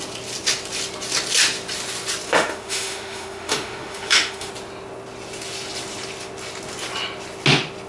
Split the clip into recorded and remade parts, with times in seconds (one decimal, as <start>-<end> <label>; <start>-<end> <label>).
0.0-2.3 recorded; 2.3-4.5 remade; 4.5-7.9 recorded